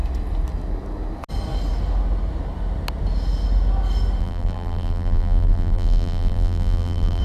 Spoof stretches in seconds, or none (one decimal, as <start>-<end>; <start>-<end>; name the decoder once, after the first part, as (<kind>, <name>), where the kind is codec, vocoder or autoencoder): 4.2-7.2 (vocoder, BigVGAN v2)